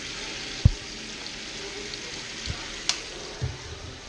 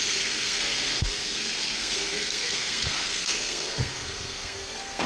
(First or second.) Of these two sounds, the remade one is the second